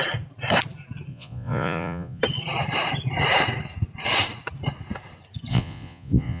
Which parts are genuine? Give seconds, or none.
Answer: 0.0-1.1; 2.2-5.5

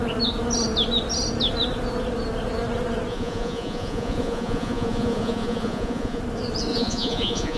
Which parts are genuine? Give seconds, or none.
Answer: 0.0-3.1; 6.2-6.7

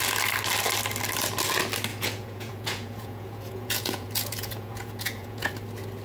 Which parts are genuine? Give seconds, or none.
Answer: 0.0-1.9; 5.5-6.0

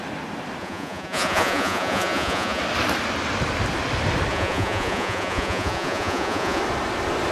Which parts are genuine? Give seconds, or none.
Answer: 0.0-0.6; 2.6-4.3; 6.6-7.3

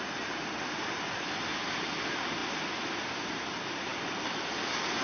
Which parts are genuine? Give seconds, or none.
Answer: 0.0-5.0

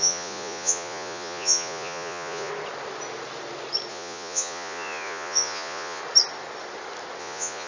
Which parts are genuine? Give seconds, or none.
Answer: 2.5-3.9; 6.0-7.2

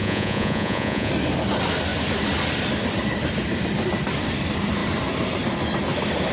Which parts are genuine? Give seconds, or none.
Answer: 1.1-6.3